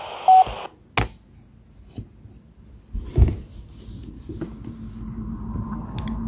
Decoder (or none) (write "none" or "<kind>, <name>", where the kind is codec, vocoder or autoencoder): none